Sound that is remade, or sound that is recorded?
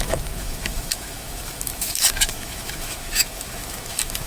remade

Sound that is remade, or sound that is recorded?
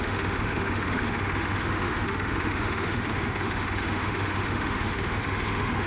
remade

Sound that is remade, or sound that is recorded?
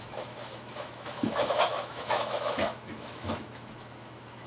remade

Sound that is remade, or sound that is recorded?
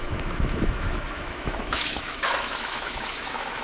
remade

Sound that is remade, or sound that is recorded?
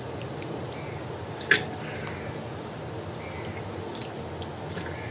recorded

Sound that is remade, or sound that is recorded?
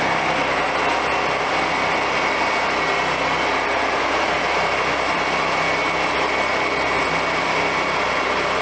recorded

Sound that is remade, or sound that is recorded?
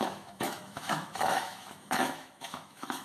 remade